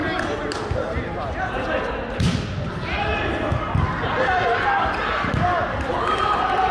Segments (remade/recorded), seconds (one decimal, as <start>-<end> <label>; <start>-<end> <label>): 0.0-6.7 recorded